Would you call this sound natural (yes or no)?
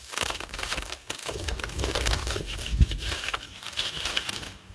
no